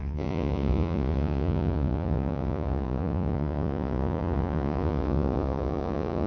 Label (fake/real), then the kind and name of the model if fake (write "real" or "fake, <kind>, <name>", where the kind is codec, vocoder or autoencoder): fake, vocoder, Vocos